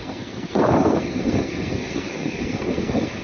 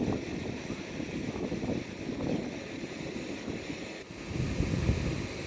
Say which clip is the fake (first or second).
first